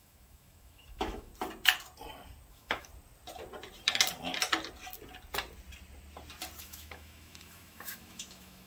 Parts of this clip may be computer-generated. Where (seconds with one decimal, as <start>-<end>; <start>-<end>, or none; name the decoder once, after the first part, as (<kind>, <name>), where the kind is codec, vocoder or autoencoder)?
0.0-1.3 (autoencoder, DAC-VAE); 2.5-2.9; 6.6-8.7